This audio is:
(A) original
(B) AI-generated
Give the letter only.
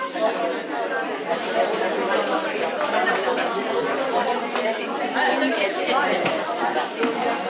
A